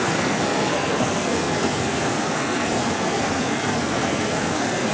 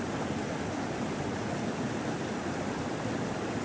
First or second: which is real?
second